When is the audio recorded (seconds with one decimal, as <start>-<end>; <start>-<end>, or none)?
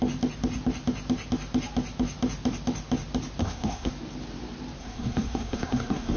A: 0.0-3.4; 3.9-4.8